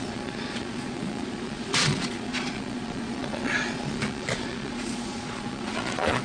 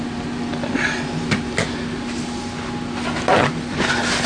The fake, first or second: first